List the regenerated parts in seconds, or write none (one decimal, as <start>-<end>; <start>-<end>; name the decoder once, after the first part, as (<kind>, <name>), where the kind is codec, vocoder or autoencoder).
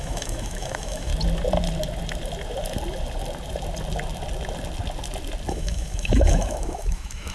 0.0-1.1 (autoencoder, DAC-VAE); 5.5-7.3